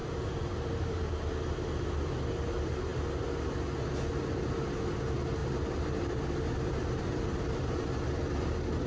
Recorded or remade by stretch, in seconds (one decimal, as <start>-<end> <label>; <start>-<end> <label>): 0.0-1.1 remade; 1.1-5.4 recorded; 5.4-7.9 remade; 7.9-8.9 recorded